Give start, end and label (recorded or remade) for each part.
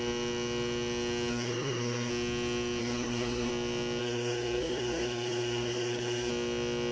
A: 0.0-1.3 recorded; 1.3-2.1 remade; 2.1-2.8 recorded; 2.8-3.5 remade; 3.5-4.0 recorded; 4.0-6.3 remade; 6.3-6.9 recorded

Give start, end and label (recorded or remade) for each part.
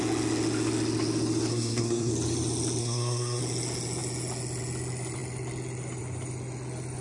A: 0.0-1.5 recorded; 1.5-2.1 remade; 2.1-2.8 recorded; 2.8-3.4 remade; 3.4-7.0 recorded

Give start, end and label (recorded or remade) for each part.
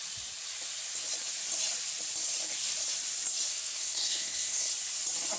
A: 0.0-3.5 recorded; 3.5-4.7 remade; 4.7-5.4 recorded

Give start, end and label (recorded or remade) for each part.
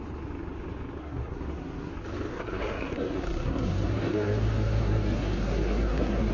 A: 0.0-1.0 recorded; 1.0-1.9 remade; 1.9-2.3 recorded; 2.3-6.3 remade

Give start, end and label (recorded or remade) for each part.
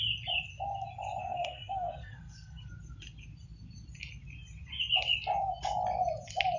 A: 0.0-1.2 recorded; 1.2-2.7 remade; 2.7-6.6 recorded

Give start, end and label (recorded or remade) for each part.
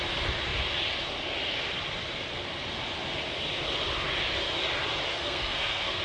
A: 0.0-5.1 recorded; 5.1-6.0 remade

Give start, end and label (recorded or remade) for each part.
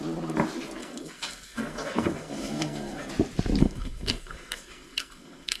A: 0.0-0.8 recorded; 0.8-3.1 remade; 3.1-3.6 recorded; 3.6-5.6 remade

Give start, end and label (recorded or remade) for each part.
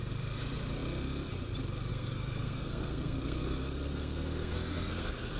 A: 0.0-1.9 recorded; 1.9-5.4 remade